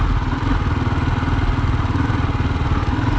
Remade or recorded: recorded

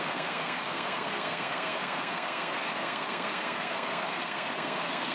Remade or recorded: remade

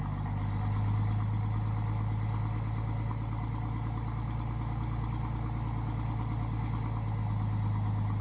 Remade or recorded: recorded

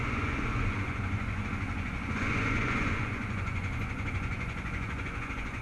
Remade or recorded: remade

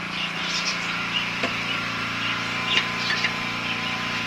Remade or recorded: remade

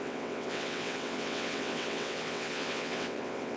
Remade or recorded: remade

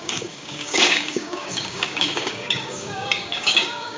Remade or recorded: remade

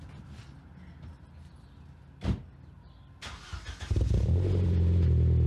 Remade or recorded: remade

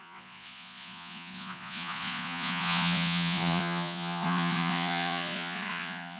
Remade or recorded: remade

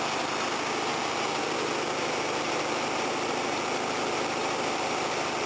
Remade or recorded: recorded